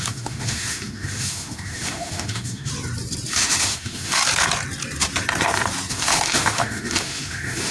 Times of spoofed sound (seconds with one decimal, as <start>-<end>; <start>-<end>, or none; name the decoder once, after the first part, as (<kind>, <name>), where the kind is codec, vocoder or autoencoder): 0.0-2.7 (autoencoder, DAC-VAE); 3.3-4.2; 5.9-7.7